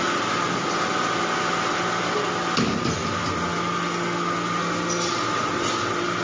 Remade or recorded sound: recorded